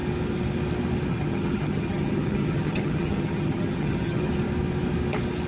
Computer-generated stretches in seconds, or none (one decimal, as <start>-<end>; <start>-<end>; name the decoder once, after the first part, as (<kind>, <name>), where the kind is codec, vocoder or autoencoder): 1.1-4.3 (vocoder, HiFi-GAN)